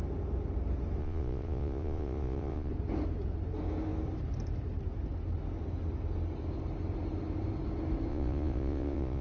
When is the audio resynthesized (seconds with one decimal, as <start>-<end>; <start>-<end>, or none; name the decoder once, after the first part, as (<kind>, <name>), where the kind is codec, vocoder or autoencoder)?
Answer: 1.0-2.7 (vocoder, Vocos); 8.1-9.2